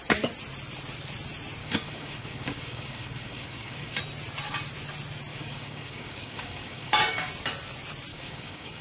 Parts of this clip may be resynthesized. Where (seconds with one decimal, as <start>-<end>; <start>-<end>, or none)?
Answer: 1.6-4.0; 5.3-7.3; 8.1-8.8